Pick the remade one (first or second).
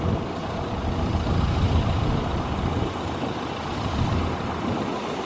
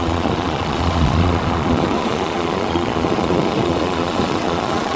second